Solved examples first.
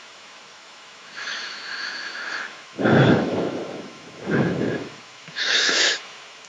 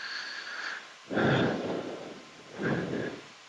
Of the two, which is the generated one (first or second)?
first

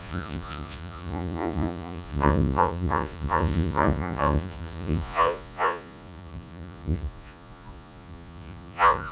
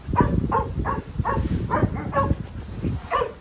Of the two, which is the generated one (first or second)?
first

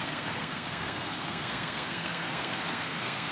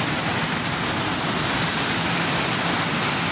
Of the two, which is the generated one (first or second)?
first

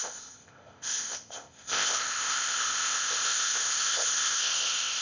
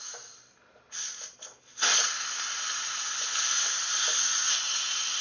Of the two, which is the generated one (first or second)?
first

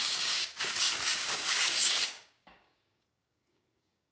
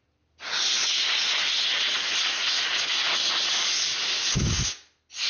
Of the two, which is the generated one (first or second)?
first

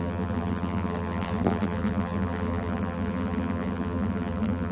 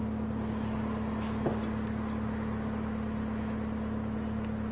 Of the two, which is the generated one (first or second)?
first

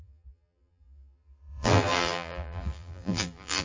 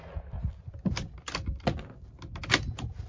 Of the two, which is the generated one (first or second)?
first